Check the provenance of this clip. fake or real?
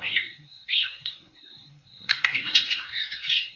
fake